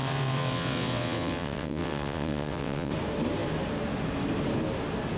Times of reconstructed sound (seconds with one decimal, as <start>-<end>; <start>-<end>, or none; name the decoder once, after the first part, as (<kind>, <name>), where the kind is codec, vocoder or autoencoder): 0.0-2.9 (vocoder, WaveNeXt)